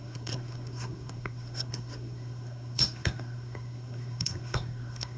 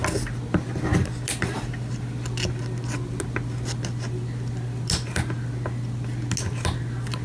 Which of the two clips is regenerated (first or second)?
first